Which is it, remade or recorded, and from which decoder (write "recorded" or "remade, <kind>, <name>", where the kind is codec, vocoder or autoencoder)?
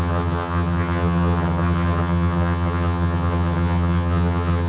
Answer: remade, vocoder, HiFi-GAN